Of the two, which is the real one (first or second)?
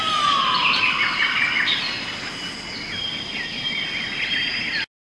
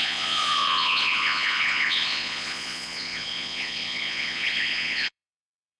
first